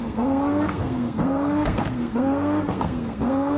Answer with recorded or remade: remade